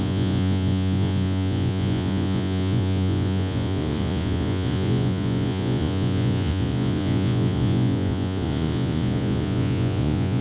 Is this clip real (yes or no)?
no